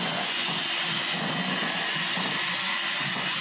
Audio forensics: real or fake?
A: fake